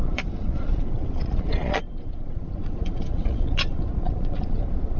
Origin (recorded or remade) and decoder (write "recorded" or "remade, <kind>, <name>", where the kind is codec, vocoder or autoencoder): remade, vocoder, Vocos